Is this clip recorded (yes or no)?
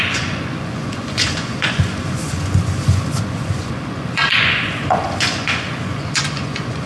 no